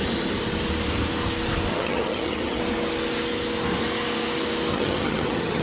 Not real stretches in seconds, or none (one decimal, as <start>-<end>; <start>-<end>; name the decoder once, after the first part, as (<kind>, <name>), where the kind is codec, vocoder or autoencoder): 1.7-2.6 (vocoder, HiFi-GAN); 4.7-5.6

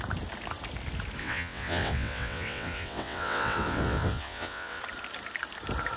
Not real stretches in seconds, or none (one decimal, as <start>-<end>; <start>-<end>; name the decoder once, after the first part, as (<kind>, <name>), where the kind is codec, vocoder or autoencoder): 1.2-4.8 (vocoder, WaveNeXt)